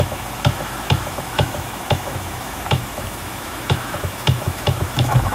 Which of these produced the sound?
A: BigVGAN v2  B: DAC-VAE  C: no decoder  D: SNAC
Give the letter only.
B